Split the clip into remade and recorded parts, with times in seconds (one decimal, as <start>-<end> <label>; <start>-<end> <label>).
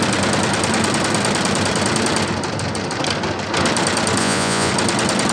0.0-4.2 recorded; 4.2-4.7 remade; 4.7-5.3 recorded